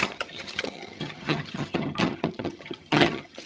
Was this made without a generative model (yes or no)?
no